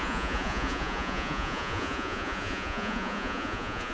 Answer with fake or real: fake